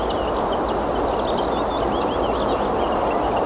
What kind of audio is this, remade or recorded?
recorded